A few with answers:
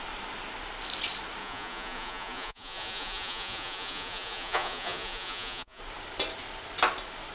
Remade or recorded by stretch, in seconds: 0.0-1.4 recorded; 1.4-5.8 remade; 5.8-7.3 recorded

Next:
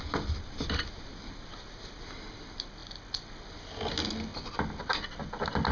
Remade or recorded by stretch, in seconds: 0.0-5.7 recorded

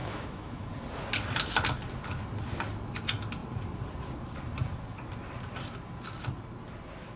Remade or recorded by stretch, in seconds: 0.0-0.7 remade; 0.7-7.2 recorded

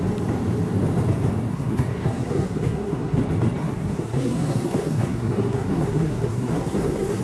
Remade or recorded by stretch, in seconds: 0.0-1.5 recorded; 1.5-3.2 remade; 3.2-3.6 recorded; 3.6-7.2 remade

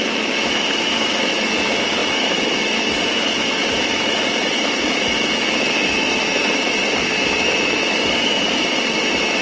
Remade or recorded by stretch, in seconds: 0.0-9.4 remade

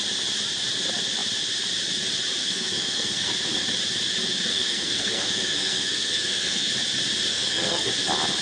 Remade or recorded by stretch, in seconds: 0.0-2.4 recorded; 2.4-3.3 remade; 3.3-4.5 recorded; 4.5-6.7 remade; 6.7-7.3 recorded; 7.3-7.9 remade; 7.9-8.4 recorded